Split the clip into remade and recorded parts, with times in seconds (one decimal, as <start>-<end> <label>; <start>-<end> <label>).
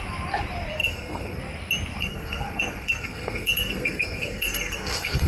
0.0-0.8 recorded; 0.8-1.4 remade; 1.4-2.0 recorded; 2.0-5.3 remade